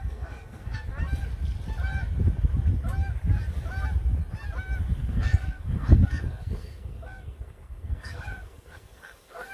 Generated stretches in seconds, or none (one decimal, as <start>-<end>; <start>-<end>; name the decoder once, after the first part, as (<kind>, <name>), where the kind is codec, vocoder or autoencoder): 0.0-0.9 (codec, SNAC); 5.0-9.5